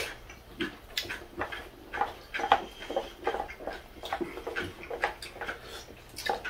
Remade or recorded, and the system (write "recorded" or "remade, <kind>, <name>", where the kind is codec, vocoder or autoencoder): recorded